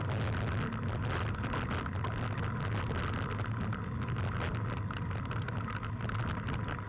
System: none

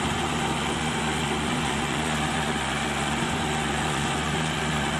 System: vocoder, Vocos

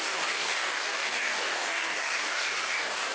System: codec, DAC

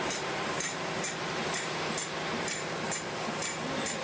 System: vocoder, BigVGAN v2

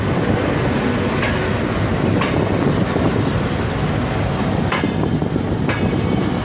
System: none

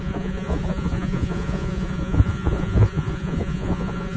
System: vocoder, Vocos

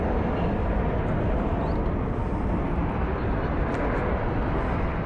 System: vocoder, BigVGAN v2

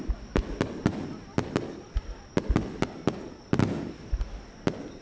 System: none